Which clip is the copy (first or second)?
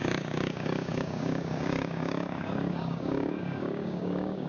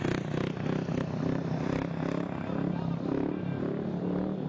first